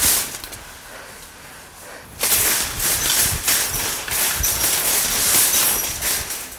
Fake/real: real